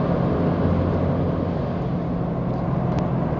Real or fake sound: real